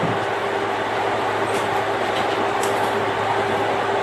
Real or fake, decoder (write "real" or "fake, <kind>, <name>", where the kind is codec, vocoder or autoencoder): real